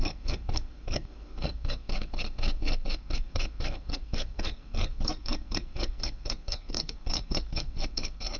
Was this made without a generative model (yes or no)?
no